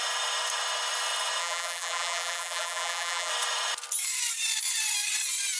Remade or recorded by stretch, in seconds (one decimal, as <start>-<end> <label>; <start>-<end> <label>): 0.0-1.4 recorded; 1.4-3.3 remade; 3.3-5.6 recorded